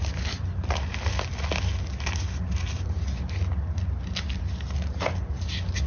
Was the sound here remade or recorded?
recorded